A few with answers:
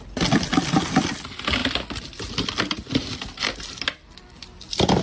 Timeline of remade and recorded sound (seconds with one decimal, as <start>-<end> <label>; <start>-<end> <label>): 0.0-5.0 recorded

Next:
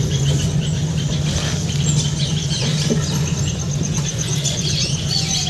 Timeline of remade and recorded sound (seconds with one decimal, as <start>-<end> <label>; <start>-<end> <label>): 0.0-0.8 remade; 0.8-2.1 recorded; 2.1-2.7 remade; 2.7-3.4 recorded; 3.4-5.5 remade

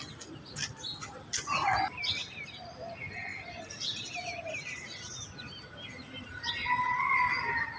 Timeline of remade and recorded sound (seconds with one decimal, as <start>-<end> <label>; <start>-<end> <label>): 0.0-7.8 recorded

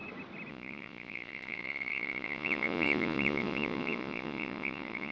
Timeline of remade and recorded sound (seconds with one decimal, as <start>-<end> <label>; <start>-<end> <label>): 0.0-0.5 recorded; 0.5-5.1 remade

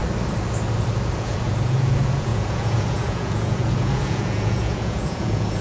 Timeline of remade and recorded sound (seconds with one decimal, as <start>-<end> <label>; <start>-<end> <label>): 0.0-1.1 recorded; 1.1-5.6 remade